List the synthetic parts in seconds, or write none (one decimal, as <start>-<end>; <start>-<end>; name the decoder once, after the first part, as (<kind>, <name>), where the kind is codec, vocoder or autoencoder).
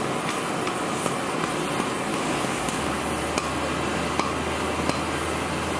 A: 2.1-3.0 (codec, DAC)